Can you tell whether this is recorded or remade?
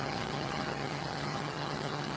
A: remade